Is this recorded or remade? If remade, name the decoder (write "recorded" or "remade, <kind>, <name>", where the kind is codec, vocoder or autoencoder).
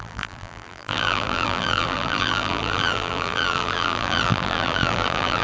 remade, vocoder, BigVGAN v2